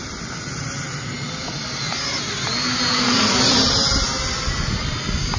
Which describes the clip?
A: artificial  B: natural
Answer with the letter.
B